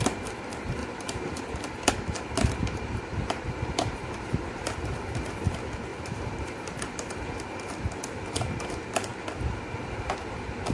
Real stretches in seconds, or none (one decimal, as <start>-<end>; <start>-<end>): 0.0-0.8; 1.9-2.6; 4.9-5.9; 7.2-10.7